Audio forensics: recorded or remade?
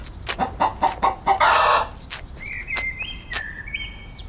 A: recorded